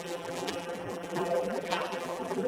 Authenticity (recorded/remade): remade